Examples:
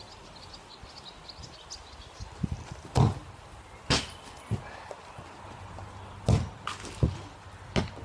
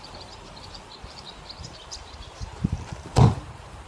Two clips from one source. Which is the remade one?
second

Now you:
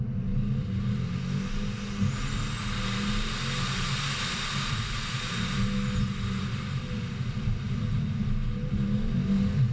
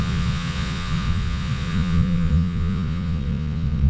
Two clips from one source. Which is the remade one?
second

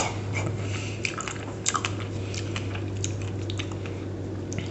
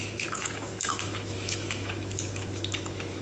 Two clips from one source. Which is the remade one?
second